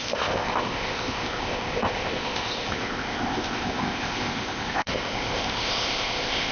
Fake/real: fake